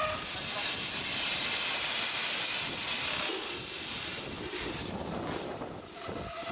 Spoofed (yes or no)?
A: no